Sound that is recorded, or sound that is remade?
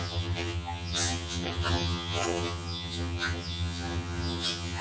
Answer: remade